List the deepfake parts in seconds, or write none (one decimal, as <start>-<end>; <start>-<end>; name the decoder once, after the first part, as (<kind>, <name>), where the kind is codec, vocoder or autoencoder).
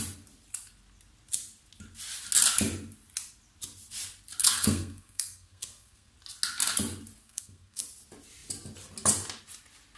4.4-6.1 (codec, SNAC); 7.2-7.8